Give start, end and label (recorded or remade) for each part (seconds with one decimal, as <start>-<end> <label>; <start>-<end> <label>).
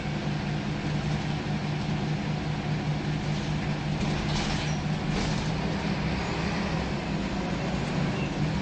0.0-8.6 recorded